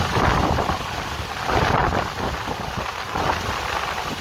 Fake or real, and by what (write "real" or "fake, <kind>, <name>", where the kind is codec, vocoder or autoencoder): fake, vocoder, BigVGAN v2